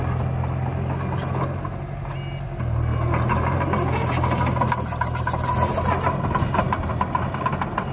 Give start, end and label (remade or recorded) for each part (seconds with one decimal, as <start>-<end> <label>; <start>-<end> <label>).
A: 0.0-7.9 recorded